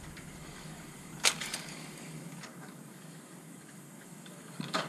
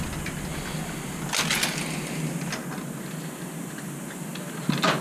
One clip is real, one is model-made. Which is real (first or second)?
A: second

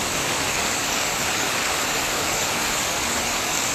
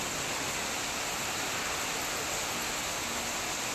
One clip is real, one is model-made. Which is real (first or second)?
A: second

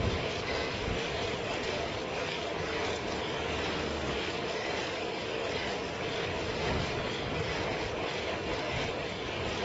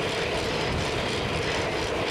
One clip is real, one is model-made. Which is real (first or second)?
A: second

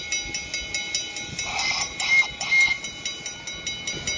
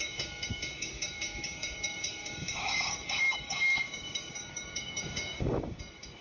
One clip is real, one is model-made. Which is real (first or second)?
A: first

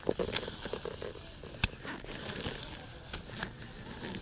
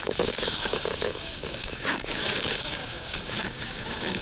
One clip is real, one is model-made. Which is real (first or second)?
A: first